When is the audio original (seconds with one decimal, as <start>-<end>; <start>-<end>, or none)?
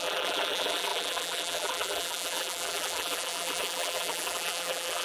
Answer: none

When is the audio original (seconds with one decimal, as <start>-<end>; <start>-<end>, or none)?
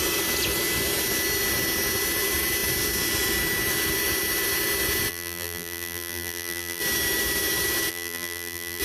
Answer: 0.0-5.1; 6.8-7.9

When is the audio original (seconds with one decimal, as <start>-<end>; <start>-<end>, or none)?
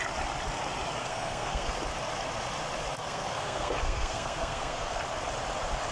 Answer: 0.0-1.0; 1.7-3.0; 5.0-5.9